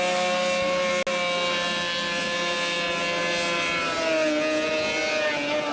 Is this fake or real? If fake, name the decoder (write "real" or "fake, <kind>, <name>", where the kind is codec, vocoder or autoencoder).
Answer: real